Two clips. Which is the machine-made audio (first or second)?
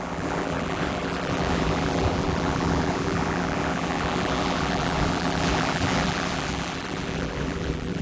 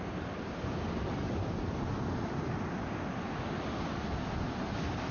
first